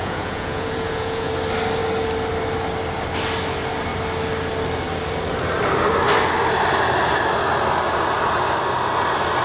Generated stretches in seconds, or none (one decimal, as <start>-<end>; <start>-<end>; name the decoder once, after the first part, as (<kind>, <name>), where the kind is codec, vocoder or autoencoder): 0.0-1.3 (vocoder, Vocos)